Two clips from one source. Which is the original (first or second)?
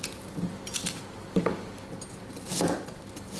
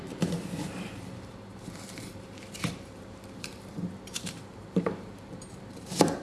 first